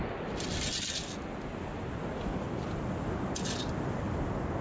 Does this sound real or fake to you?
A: real